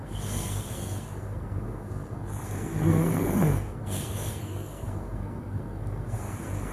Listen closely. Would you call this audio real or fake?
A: fake